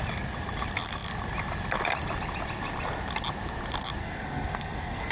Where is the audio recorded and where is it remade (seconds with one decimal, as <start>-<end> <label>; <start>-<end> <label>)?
0.0-4.0 recorded; 4.0-5.1 remade